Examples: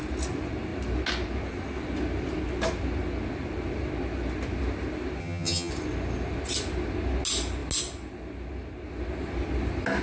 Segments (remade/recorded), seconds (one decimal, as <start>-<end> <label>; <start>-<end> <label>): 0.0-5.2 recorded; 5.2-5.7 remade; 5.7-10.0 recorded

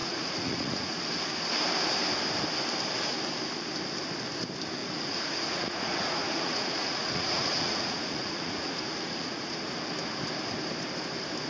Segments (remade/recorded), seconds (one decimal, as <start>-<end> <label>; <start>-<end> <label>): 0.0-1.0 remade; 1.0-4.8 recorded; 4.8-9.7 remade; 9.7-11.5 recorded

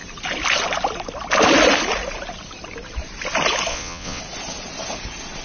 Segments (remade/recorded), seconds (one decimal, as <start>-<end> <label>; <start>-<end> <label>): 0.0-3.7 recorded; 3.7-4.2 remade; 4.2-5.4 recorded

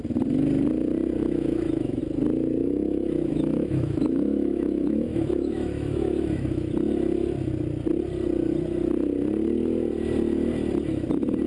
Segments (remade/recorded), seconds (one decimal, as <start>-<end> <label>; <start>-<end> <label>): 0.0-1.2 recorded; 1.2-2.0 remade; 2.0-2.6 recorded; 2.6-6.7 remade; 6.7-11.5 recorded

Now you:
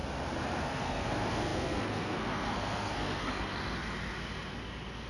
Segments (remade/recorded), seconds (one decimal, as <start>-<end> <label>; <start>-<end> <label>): 0.0-0.6 recorded; 0.6-3.2 remade; 3.2-5.1 recorded